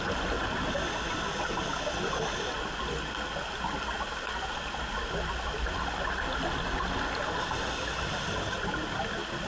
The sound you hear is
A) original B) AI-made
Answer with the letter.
A